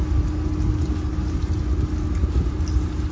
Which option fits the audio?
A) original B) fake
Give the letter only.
A